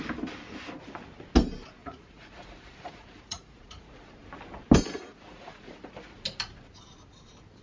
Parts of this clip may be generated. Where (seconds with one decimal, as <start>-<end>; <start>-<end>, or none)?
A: 1.8-4.0; 5.1-5.9